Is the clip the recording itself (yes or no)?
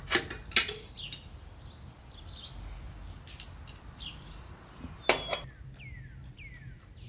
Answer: yes